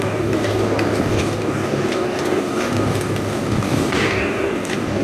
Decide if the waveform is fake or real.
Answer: fake